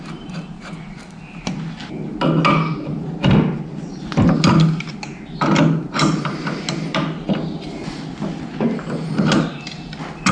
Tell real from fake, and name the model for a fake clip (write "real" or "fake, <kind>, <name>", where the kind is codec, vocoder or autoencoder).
real